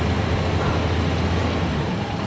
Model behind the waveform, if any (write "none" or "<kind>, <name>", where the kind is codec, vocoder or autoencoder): none